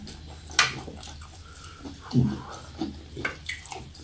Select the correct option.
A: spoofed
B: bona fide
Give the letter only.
B